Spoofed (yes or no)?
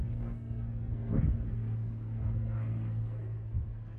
yes